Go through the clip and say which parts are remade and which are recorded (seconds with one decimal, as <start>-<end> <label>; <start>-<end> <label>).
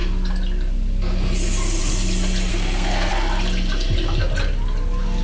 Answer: 0.0-2.5 recorded; 2.5-3.1 remade; 3.1-5.2 recorded